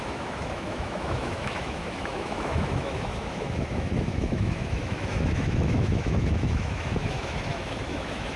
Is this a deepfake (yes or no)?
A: yes